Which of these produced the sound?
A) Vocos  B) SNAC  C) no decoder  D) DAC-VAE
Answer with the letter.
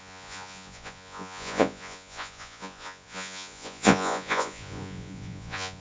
A